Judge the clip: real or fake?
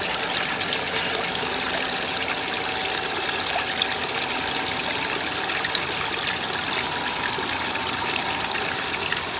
real